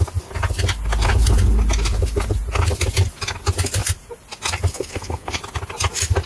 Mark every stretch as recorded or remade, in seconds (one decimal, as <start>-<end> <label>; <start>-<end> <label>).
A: 0.0-4.7 recorded; 4.7-5.4 remade; 5.4-6.3 recorded